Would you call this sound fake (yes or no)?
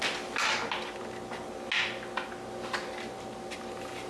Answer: no